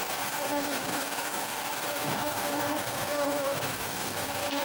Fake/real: fake